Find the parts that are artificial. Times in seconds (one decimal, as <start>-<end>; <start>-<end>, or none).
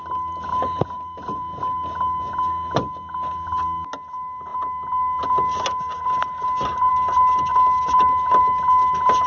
0.5-1.6